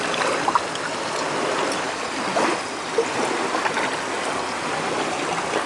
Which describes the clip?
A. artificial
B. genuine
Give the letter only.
B